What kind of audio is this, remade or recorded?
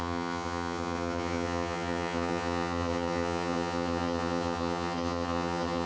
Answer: remade